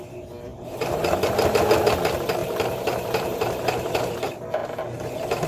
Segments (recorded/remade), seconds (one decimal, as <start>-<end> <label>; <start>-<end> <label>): 0.0-2.4 recorded; 2.4-4.1 remade; 4.1-5.5 recorded